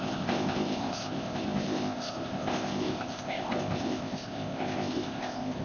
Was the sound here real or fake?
fake